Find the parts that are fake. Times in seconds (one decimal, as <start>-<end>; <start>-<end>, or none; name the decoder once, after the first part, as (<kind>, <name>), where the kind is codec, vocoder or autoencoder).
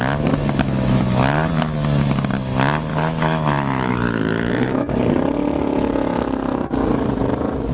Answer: 2.9-4.9 (autoencoder, DAC-VAE)